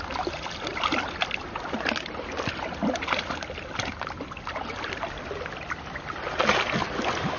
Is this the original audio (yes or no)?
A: yes